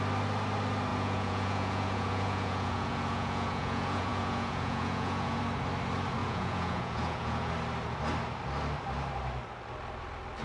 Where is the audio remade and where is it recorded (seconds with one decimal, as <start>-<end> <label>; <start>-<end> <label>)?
0.0-0.9 recorded; 0.9-5.4 remade; 5.4-6.2 recorded; 6.2-7.5 remade; 7.5-10.4 recorded